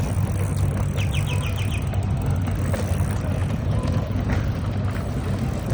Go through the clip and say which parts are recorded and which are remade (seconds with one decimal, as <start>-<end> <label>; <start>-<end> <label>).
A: 0.0-3.4 recorded; 3.4-4.6 remade; 4.6-5.7 recorded